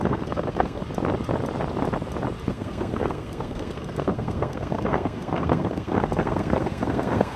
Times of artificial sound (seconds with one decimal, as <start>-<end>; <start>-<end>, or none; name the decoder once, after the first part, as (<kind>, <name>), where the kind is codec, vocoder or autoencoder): 0.0-0.8 (codec, SNAC); 2.5-7.4